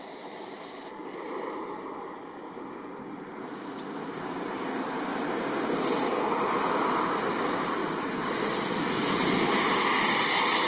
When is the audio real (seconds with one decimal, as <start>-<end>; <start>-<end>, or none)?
0.0-10.7